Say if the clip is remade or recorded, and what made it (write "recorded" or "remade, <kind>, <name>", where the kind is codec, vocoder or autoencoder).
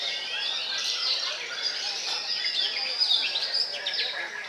remade, vocoder, BigVGAN v2